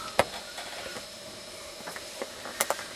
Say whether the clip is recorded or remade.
remade